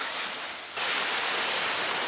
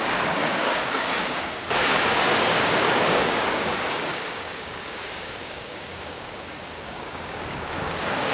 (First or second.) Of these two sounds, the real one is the first